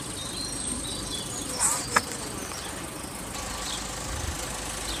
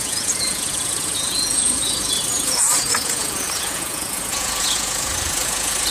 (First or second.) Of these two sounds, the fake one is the second